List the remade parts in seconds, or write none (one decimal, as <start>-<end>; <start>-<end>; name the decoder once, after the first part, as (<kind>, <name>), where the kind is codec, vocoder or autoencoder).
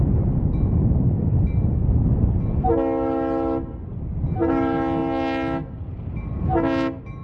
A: none